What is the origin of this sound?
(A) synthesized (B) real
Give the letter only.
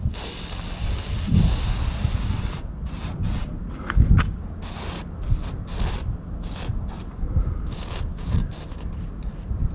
B